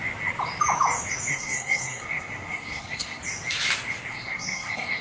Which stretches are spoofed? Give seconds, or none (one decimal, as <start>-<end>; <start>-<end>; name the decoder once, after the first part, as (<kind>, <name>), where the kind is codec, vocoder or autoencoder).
1.3-3.2 (codec, SNAC); 4.1-5.0

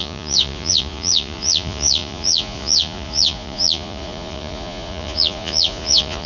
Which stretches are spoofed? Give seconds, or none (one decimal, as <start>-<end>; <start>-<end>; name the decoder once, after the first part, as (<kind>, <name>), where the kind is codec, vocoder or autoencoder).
0.0-6.3 (vocoder, Vocos)